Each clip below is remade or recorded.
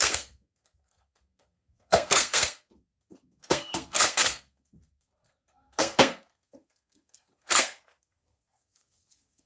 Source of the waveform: remade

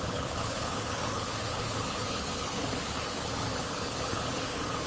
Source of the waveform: remade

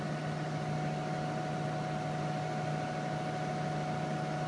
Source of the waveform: recorded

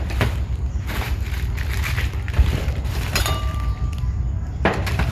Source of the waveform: remade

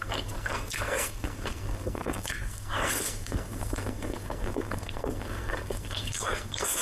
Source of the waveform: remade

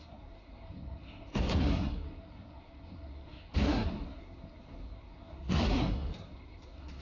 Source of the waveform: remade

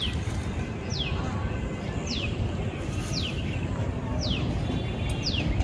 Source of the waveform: recorded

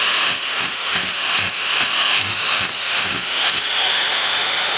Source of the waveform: remade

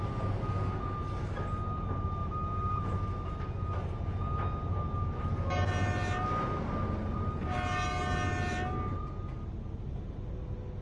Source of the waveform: recorded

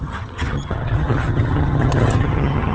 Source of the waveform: remade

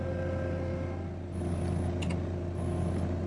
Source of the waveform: recorded